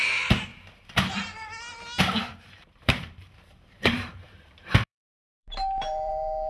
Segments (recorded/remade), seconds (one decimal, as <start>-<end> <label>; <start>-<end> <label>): 0.0-0.5 recorded; 0.5-1.1 remade; 1.1-2.3 recorded; 2.3-6.1 remade; 6.1-6.5 recorded